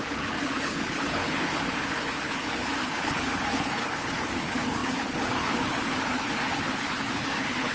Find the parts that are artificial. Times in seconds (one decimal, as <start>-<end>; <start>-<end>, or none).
0.0-7.7